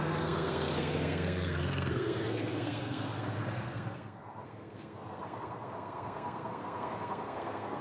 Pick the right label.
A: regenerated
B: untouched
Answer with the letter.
A